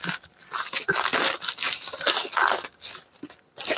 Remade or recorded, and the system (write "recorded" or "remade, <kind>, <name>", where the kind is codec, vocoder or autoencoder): recorded